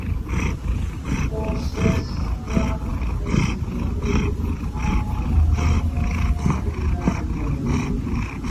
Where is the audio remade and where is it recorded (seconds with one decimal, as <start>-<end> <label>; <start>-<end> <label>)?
0.0-8.5 recorded